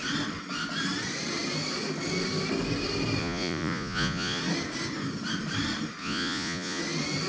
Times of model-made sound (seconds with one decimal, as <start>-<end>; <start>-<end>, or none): 3.2-4.4; 6.0-6.8